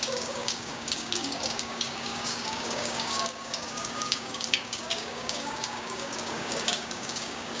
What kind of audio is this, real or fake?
fake